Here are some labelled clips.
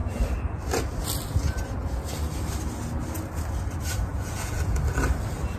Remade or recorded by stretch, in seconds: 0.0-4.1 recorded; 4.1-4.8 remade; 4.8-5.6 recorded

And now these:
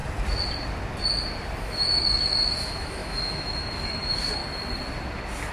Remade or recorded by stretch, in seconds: 0.0-1.6 recorded; 1.6-4.4 remade; 4.4-5.5 recorded

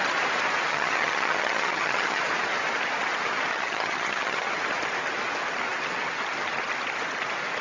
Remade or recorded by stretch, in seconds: 0.0-0.7 recorded; 0.7-2.2 remade; 2.2-3.5 recorded; 3.5-4.5 remade; 4.5-7.6 recorded

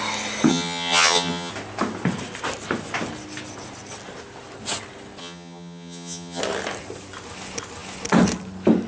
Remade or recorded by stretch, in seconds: 0.0-0.5 recorded; 0.5-1.5 remade; 1.5-5.2 recorded; 5.2-6.4 remade; 6.4-8.9 recorded

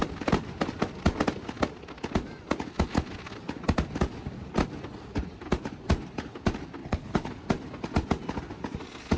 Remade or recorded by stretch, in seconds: 0.0-6.8 recorded; 6.8-7.3 remade; 7.3-9.2 recorded

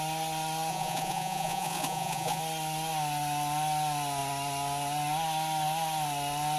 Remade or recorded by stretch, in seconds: 0.0-0.7 recorded; 0.7-2.4 remade; 2.4-6.6 recorded

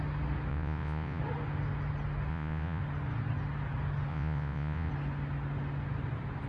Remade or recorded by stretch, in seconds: 0.0-0.5 recorded; 0.5-1.2 remade; 1.2-2.3 recorded; 2.3-2.8 remade; 2.8-4.1 recorded; 4.1-4.9 remade; 4.9-6.5 recorded

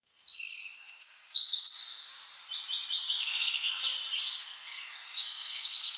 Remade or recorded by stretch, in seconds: 0.0-2.1 remade; 2.1-3.1 recorded; 3.1-3.8 remade; 3.8-4.4 recorded; 4.4-6.0 remade